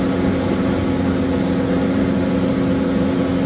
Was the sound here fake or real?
real